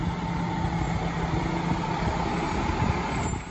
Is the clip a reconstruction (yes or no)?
no